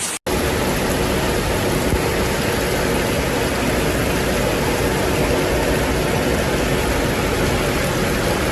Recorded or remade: recorded